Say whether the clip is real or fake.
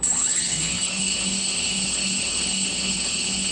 fake